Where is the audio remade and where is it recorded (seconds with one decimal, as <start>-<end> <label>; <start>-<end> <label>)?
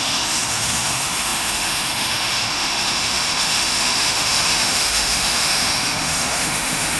0.0-7.0 remade